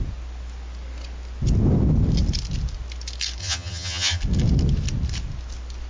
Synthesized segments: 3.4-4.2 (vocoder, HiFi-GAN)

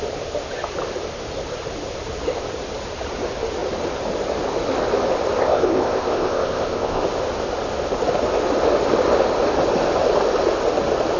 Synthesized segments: 5.4-7.0 (codec, ZipCodec)

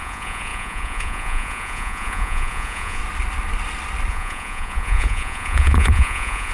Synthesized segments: 0.0-3.0 (vocoder, Vocos); 4.1-6.5

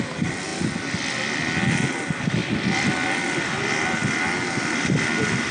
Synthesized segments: none

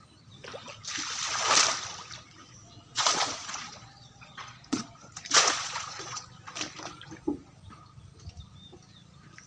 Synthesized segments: 2.6-6.2 (vocoder, Vocos)